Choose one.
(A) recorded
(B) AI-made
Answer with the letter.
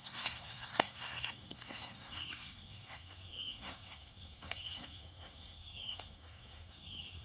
B